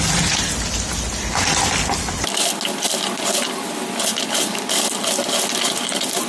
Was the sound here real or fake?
real